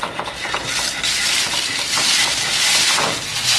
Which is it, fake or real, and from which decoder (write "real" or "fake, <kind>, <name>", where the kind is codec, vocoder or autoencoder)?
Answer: real